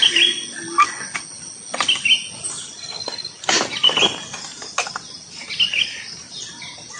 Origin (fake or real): real